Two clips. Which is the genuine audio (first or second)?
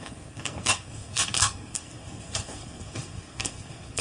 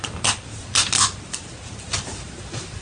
second